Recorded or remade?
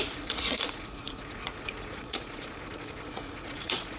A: remade